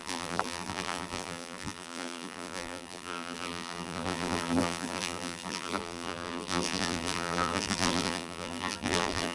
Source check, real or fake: fake